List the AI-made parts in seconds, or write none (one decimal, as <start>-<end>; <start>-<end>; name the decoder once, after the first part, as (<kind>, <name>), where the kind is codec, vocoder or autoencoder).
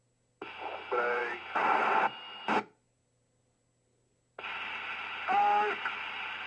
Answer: none